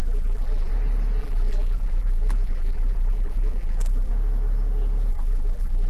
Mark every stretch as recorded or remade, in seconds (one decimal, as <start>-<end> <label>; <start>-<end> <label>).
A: 0.0-0.7 remade; 0.7-1.2 recorded; 1.2-4.1 remade; 4.1-5.1 recorded; 5.1-5.9 remade